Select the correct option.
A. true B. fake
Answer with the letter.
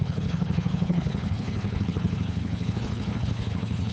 B